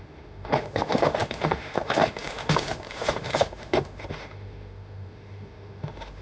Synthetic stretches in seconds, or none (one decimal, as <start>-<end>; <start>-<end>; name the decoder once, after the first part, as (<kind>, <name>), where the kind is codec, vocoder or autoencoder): 0.0-6.2 (autoencoder, DAC-VAE)